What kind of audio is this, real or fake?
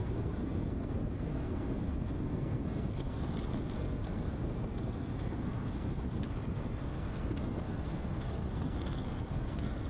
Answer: fake